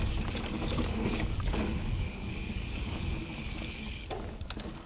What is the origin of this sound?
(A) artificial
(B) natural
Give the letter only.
A